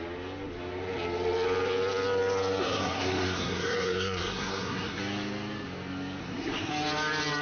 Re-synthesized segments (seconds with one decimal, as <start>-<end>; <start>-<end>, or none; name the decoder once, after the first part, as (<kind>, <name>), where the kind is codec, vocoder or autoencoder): 2.6-5.0 (codec, SNAC); 6.2-6.7